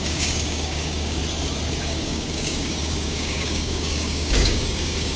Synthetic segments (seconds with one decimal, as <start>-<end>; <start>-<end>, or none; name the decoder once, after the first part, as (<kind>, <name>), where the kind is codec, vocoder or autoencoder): 0.0-1.2 (codec, DAC); 1.8-5.2